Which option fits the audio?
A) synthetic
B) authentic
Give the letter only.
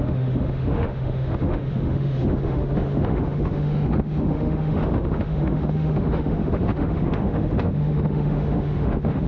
A